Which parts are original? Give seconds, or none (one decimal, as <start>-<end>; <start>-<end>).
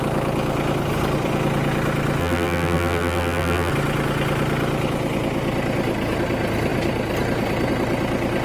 0.0-2.2; 3.7-8.4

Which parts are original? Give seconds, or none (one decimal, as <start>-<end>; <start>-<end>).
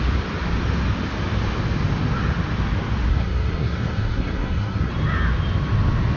0.0-3.1; 4.9-6.2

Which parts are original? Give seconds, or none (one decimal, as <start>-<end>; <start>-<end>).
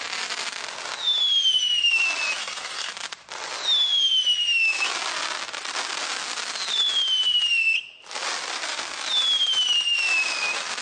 0.0-2.4; 2.9-10.8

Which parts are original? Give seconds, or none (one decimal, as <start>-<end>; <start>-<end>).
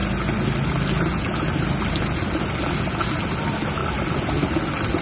0.0-5.0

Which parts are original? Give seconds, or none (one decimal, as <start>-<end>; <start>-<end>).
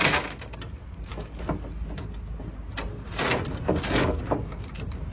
0.0-5.1